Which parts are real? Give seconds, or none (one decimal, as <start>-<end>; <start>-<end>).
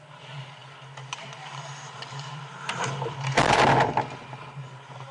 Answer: 0.0-5.1